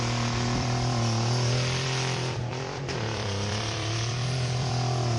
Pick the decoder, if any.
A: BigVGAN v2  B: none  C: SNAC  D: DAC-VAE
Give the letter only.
A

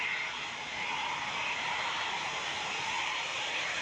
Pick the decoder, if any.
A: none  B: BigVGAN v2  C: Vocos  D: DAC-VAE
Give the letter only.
B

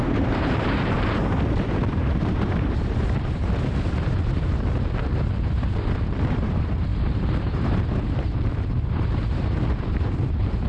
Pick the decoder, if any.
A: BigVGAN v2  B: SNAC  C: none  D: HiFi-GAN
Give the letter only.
A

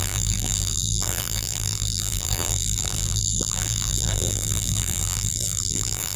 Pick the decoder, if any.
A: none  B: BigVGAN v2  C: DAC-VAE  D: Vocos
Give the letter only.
B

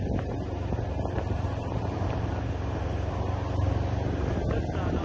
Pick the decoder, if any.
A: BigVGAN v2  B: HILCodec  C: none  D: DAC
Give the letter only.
C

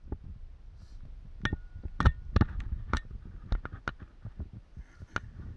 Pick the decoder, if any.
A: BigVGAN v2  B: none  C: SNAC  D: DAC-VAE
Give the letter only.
B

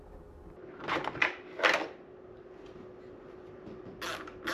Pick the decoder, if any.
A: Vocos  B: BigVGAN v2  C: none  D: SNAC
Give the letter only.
C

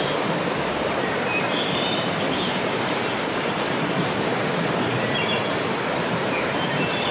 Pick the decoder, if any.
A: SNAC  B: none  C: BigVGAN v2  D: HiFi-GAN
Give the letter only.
C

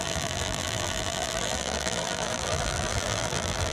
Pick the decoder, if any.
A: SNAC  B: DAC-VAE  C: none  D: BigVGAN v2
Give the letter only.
D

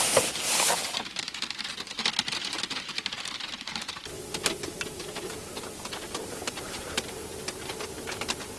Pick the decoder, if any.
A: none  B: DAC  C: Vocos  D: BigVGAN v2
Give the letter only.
D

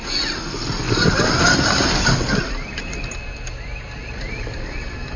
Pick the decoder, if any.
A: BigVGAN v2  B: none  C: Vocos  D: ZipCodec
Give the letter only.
A